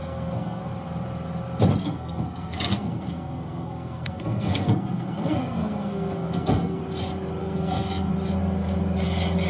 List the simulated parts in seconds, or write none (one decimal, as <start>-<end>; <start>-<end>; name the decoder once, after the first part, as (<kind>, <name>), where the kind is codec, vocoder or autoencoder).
0.0-0.7 (codec, SNAC); 1.8-6.8; 7.4-8.1